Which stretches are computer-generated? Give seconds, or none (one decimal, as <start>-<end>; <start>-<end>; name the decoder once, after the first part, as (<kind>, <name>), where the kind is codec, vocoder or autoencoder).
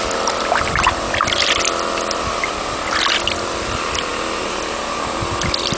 none